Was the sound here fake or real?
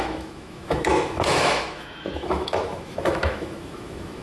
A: fake